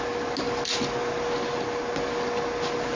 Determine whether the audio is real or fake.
real